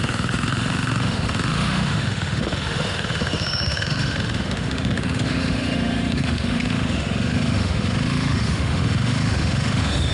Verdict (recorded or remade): remade